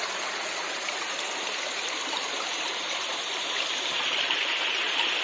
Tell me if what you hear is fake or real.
fake